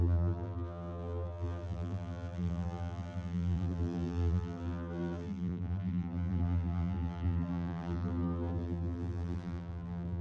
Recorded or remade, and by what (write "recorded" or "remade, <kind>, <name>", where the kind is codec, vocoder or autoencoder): remade, vocoder, BigVGAN v2